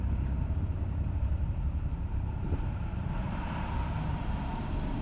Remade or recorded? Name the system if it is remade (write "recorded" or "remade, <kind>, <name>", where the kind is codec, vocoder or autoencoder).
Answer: remade, vocoder, BigVGAN v2